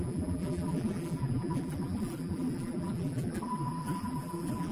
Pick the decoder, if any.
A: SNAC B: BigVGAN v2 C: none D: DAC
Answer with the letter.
B